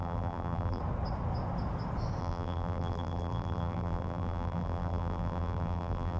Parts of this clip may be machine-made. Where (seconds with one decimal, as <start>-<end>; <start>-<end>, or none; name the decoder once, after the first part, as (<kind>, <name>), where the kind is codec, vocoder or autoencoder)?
0.0-0.8 (vocoder, BigVGAN v2); 2.2-6.2